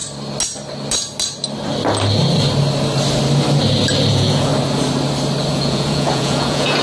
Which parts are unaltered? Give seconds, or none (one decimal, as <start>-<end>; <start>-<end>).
0.0-4.1; 4.5-5.5